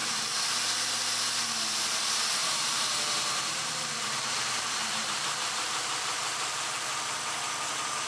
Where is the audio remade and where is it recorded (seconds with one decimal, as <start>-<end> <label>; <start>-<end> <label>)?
0.0-2.4 recorded; 2.4-6.6 remade; 6.6-8.1 recorded

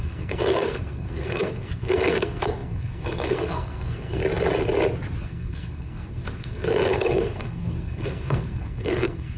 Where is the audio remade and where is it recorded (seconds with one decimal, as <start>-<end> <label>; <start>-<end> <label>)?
0.0-4.2 remade; 4.2-5.2 recorded; 5.2-9.4 remade

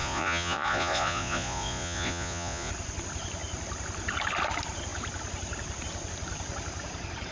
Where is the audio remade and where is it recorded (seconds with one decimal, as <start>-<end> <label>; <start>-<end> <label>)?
0.0-2.7 remade; 2.7-7.3 recorded

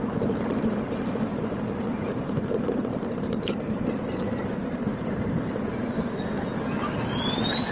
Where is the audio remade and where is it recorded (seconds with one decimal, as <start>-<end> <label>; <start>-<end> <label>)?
0.0-1.3 recorded; 1.3-5.9 remade; 5.9-7.7 recorded

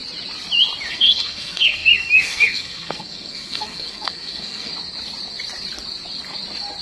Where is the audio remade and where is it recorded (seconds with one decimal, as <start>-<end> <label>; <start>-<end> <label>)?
0.0-0.9 recorded; 0.9-4.7 remade; 4.7-6.8 recorded